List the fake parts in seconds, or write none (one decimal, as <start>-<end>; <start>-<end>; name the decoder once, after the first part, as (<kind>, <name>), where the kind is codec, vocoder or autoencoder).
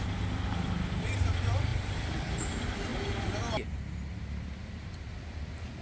1.7-2.4 (vocoder, BigVGAN v2)